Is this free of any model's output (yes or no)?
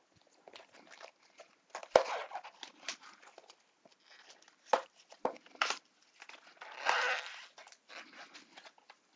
yes